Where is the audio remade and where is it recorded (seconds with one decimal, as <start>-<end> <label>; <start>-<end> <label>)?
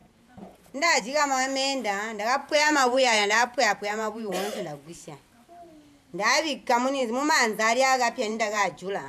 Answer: 0.0-1.0 remade; 1.0-2.4 recorded; 2.4-4.3 remade; 4.3-8.3 recorded; 8.3-9.1 remade